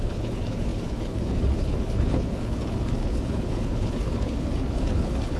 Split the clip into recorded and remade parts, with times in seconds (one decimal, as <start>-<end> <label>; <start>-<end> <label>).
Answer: 0.0-5.4 remade